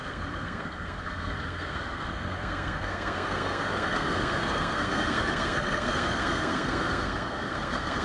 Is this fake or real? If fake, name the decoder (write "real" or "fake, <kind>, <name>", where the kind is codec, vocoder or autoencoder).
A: fake, codec, SNAC